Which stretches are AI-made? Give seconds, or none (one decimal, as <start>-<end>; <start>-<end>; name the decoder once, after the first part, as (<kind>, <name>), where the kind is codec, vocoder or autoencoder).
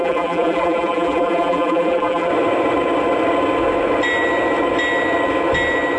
0.0-2.3 (vocoder, BigVGAN v2)